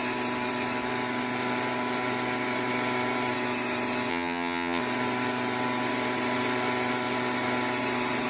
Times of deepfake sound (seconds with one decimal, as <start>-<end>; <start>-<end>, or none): 4.1-4.8